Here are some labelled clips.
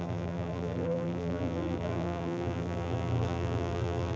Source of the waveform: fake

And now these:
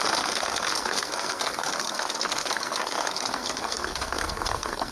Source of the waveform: fake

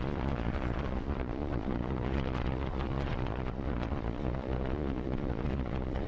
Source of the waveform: fake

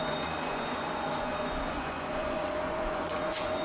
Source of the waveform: fake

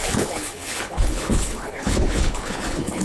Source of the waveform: fake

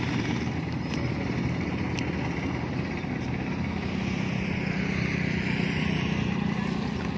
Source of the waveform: real